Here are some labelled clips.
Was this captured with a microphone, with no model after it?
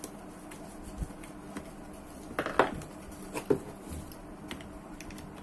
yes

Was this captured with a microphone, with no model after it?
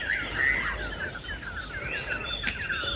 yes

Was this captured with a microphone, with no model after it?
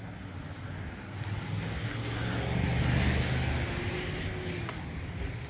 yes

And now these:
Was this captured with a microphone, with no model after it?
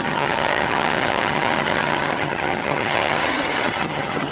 no